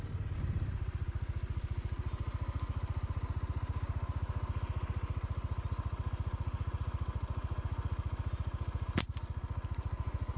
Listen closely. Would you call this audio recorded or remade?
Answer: recorded